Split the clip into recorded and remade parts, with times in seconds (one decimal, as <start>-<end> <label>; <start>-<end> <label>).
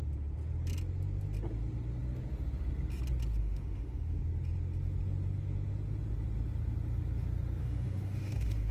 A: 0.0-3.4 recorded; 3.4-4.2 remade; 4.2-7.6 recorded; 7.6-8.7 remade